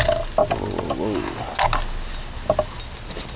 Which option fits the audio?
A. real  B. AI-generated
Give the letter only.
A